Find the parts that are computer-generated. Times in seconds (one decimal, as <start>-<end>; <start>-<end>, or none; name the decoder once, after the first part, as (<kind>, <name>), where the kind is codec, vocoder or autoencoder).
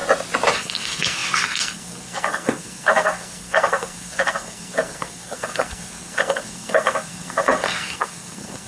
0.5-8.7 (codec, SNAC)